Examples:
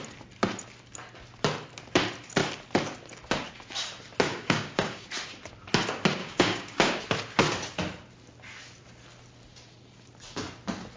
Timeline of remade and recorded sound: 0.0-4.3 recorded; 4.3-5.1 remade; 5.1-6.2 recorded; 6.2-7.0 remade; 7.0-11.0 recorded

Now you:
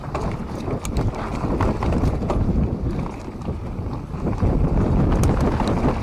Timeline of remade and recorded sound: 0.0-6.0 recorded

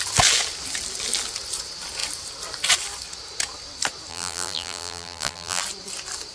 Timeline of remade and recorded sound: 0.0-4.1 recorded; 4.1-5.6 remade; 5.6-6.3 recorded

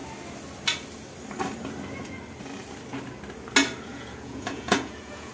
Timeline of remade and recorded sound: 0.0-3.9 recorded; 3.9-5.3 remade

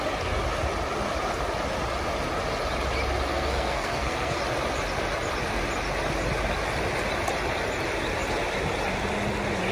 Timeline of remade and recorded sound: 0.0-3.3 recorded; 3.3-4.4 remade; 4.4-9.7 recorded

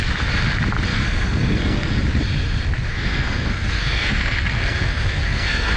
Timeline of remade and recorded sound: 0.0-0.9 recorded; 0.9-2.0 remade; 2.0-2.9 recorded; 2.9-5.8 remade

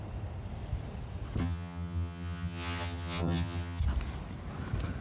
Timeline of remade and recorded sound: 0.0-1.4 recorded; 1.4-3.8 remade; 3.8-5.0 recorded